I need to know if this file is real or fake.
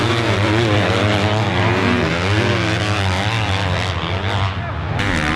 real